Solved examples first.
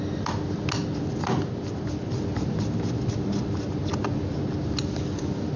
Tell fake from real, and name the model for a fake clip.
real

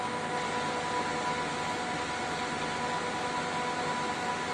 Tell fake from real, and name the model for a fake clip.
real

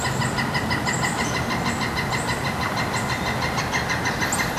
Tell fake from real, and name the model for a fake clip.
real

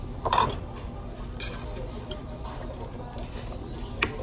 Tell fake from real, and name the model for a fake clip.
real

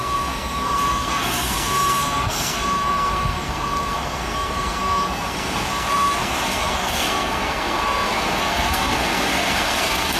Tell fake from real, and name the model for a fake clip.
fake, codec, SNAC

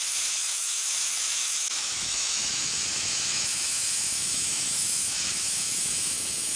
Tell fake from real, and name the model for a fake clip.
fake, autoencoder, DAC-VAE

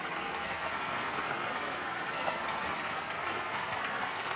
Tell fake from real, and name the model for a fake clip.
fake, codec, SNAC